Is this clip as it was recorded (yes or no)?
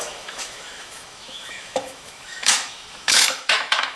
no